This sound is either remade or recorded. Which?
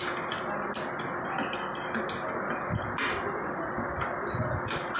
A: recorded